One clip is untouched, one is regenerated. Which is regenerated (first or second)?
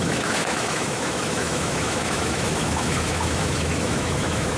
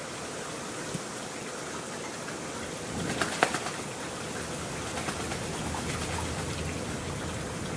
first